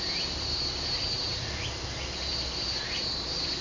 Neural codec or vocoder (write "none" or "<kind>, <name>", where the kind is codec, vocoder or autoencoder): none